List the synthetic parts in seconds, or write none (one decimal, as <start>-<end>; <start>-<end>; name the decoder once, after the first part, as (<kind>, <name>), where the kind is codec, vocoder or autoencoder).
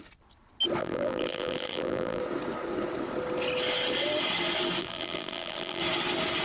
0.8-2.2 (vocoder, BigVGAN v2); 4.8-5.8